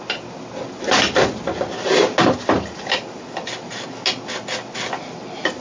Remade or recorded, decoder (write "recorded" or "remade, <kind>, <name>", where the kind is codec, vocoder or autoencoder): recorded